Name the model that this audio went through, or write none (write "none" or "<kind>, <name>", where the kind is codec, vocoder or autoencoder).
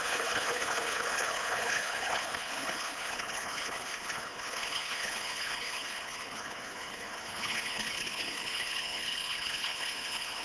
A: codec, HILCodec